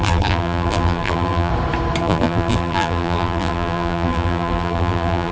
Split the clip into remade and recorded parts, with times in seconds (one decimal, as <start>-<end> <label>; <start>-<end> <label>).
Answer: 0.0-1.5 remade; 1.5-2.0 recorded; 2.0-5.3 remade